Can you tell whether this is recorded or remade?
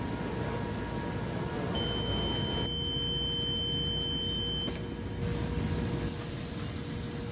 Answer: recorded